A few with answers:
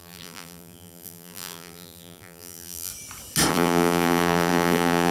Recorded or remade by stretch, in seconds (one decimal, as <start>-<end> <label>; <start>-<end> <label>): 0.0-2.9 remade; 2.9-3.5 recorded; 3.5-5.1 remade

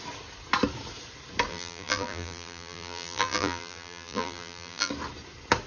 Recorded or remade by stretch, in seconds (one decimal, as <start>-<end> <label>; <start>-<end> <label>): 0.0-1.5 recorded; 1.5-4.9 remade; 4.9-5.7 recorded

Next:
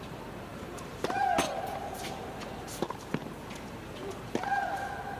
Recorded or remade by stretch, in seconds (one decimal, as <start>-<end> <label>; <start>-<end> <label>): 0.0-0.5 recorded; 0.5-1.6 remade; 1.6-5.2 recorded